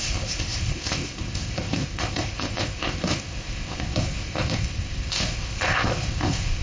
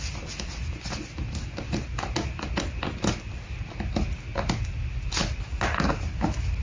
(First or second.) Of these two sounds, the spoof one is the first